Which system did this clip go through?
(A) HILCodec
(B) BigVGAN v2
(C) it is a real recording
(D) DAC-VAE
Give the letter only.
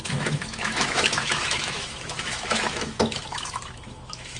D